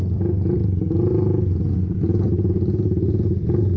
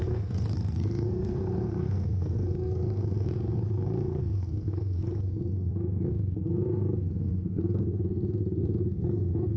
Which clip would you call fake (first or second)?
second